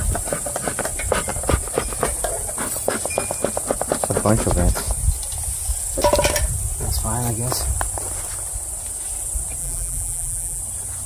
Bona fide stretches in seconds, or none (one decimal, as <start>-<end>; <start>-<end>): 0.0-9.6; 10.6-11.1

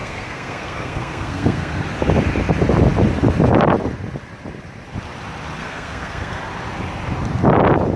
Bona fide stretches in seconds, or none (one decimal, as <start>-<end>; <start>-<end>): 1.8-5.6; 6.4-8.0

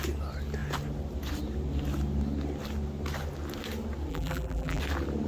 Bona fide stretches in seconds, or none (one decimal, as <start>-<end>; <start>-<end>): 0.0-4.1; 4.8-5.3

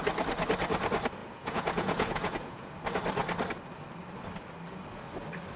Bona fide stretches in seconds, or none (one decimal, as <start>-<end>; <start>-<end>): 0.0-1.2; 2.7-5.6